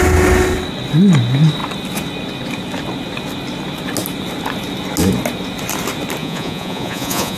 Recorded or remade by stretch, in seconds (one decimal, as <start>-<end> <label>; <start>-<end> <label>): 0.0-6.2 recorded; 6.2-7.4 remade